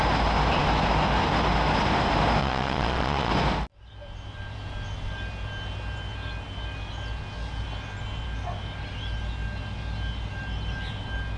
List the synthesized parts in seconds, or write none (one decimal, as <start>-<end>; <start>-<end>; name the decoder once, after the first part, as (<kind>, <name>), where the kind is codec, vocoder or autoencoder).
2.4-3.3 (vocoder, Vocos)